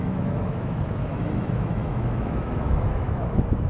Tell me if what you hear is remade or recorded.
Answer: remade